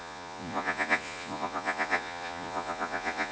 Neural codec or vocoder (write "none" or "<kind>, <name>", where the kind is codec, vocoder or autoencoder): vocoder, Vocos